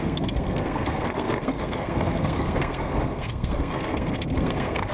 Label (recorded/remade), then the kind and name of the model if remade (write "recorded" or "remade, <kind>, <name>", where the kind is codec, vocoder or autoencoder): remade, codec, SNAC